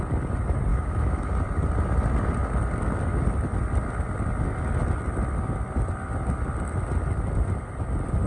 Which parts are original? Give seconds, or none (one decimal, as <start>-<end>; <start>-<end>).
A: 0.0-0.7; 1.3-8.3